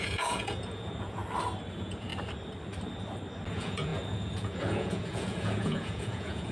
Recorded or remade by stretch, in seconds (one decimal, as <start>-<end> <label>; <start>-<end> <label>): 0.0-1.2 remade; 1.2-1.7 recorded; 1.7-2.1 remade; 2.1-3.5 recorded; 3.5-6.5 remade